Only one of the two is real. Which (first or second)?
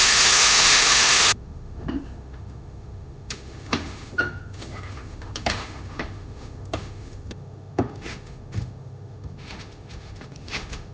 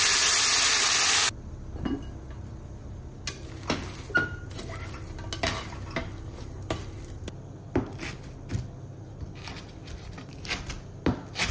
second